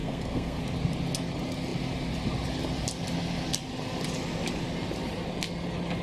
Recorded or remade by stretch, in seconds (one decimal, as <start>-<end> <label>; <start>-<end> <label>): 0.0-0.6 remade; 0.6-6.0 recorded